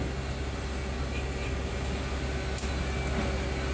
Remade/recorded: recorded